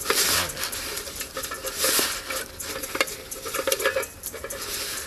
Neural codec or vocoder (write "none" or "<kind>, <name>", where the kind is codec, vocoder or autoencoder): none